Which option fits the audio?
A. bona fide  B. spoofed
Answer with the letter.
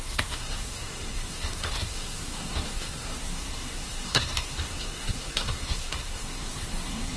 B